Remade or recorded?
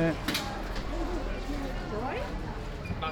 recorded